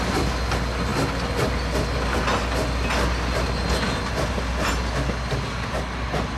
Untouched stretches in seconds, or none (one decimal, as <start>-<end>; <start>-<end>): 0.0-6.4